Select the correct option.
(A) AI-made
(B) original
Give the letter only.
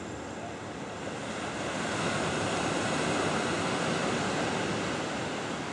B